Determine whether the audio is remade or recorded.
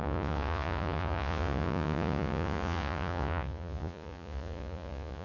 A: remade